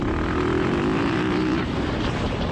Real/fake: real